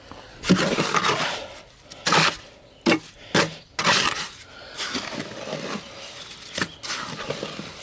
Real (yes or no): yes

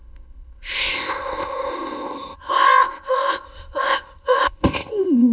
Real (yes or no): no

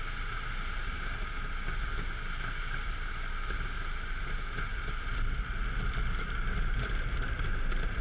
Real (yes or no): yes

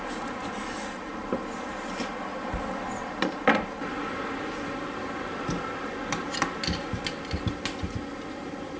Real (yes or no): yes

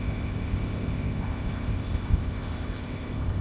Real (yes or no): no